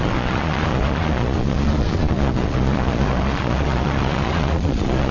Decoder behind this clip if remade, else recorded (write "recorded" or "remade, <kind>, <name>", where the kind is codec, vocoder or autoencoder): remade, vocoder, Vocos